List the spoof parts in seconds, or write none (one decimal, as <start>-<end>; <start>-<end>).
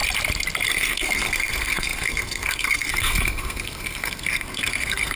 0.7-5.2